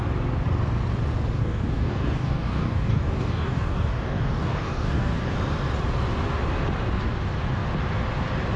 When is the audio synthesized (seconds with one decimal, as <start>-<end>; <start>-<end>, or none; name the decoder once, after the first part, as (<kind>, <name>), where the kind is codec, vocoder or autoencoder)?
1.4-5.3 (codec, DAC)